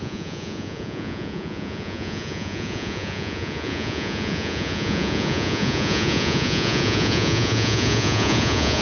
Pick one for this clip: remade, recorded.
remade